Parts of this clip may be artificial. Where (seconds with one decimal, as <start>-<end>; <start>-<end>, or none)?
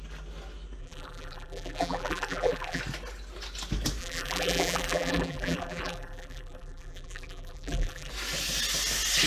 0.8-2.8; 4.0-8.1